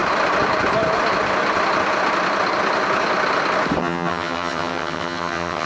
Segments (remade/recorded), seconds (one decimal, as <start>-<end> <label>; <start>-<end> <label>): 0.0-3.8 recorded; 3.8-5.7 remade